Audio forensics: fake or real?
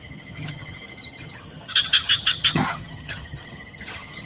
fake